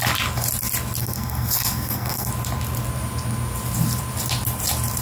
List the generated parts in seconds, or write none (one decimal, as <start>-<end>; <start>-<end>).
1.0-2.3